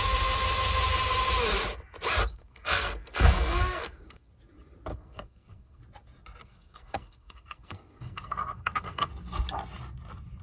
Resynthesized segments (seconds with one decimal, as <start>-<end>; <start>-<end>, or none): 2.3-4.3; 4.9-5.8; 6.4-9.1